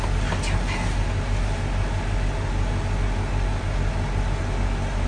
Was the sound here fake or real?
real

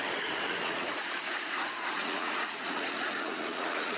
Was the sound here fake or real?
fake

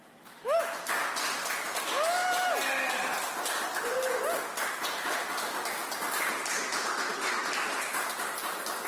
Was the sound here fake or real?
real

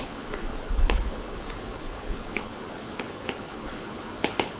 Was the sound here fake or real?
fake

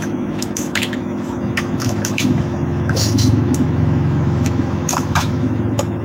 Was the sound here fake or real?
fake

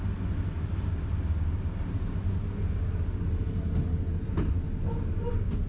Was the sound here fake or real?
real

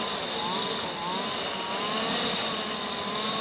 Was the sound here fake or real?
real